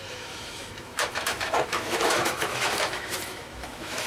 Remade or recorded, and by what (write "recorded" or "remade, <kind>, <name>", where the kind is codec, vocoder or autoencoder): remade, autoencoder, DAC-VAE